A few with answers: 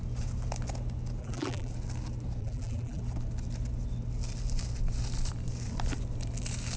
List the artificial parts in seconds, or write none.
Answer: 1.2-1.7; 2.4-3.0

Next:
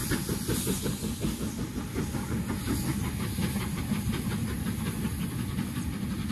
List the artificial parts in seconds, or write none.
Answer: none

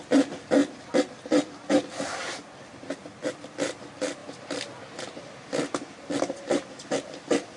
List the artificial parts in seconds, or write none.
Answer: 0.0-0.6; 3.3-4.2; 6.2-7.6

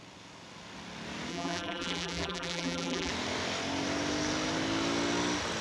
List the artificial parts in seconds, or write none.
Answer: 1.3-3.1

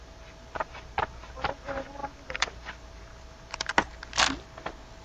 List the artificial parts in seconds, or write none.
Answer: 0.0-3.7

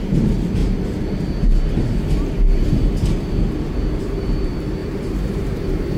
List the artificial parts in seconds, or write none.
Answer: 0.0-0.6; 4.0-6.0

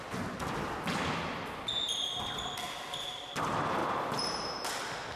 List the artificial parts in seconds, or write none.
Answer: 3.8-4.7